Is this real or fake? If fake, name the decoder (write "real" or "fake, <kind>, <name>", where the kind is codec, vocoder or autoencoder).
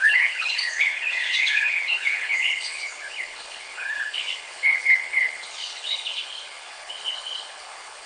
fake, codec, HILCodec